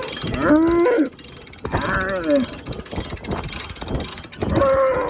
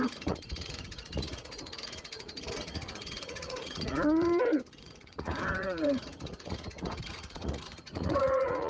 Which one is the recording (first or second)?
first